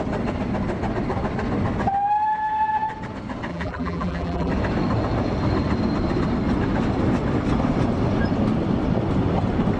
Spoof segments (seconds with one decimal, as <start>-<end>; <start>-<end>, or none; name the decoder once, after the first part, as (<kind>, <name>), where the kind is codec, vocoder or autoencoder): 3.5-4.5 (vocoder, BigVGAN v2)